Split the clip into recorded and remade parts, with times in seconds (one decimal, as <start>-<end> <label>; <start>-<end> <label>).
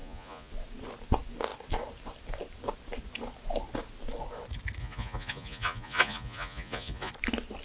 0.0-0.5 remade; 0.5-4.8 recorded; 4.8-7.1 remade; 7.1-7.6 recorded